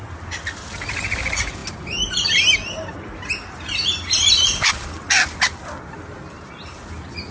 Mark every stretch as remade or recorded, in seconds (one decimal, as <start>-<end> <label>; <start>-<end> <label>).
0.0-7.3 recorded